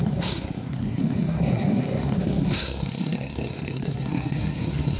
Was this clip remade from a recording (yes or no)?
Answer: yes